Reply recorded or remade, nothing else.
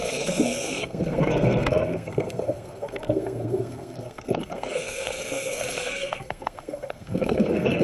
remade